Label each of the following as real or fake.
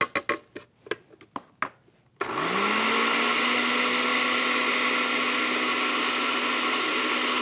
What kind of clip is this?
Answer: real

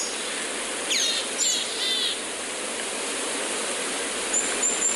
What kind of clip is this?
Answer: real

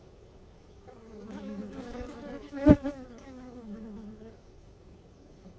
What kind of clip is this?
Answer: fake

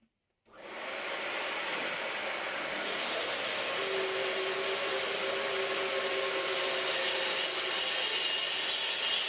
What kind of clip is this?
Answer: real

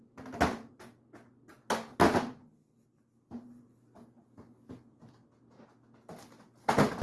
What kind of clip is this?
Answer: real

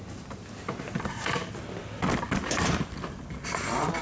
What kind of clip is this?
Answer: real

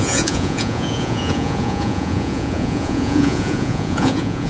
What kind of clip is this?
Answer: fake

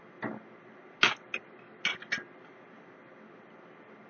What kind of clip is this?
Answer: real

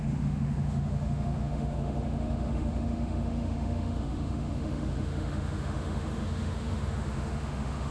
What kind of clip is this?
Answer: fake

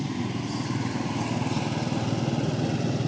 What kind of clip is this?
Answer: real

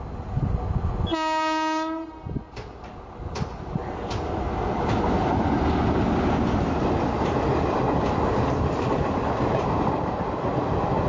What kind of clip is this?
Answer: real